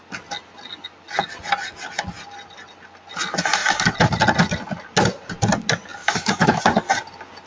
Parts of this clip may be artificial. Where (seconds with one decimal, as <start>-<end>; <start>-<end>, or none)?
6.0-6.6